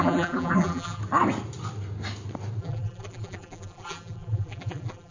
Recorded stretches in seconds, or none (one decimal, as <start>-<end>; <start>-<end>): 1.0-2.6